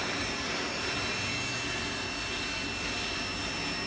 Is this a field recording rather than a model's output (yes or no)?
yes